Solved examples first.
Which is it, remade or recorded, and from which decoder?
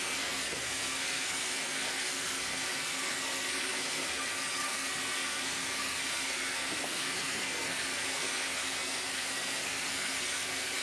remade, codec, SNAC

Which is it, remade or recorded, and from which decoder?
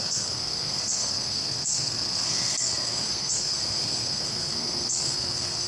remade, codec, SNAC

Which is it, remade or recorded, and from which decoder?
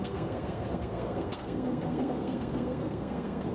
remade, codec, SNAC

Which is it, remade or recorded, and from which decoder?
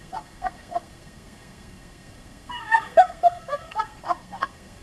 remade, codec, SNAC